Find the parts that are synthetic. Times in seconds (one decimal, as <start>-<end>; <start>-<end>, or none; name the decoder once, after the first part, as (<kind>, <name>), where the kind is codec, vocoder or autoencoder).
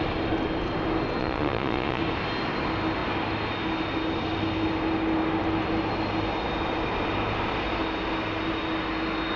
1.2-2.0 (vocoder, Vocos)